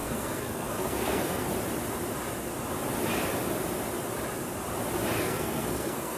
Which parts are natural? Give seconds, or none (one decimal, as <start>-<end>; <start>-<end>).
1.5-5.2